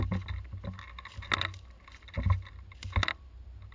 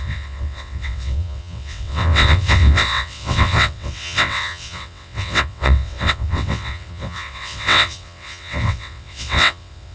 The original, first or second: first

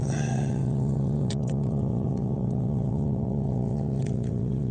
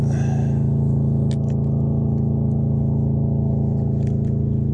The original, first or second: second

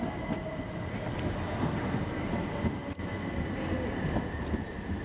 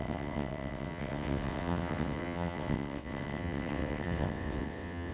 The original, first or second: first